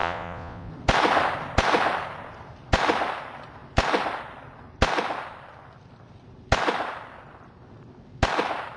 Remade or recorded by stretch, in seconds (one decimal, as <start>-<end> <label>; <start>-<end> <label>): 0.0-0.7 remade; 0.7-8.8 recorded